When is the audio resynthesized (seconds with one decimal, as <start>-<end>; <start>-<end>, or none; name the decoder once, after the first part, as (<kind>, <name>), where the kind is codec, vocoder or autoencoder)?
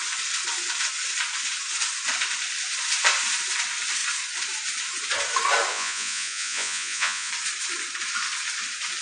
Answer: 5.7-7.3 (vocoder, Vocos)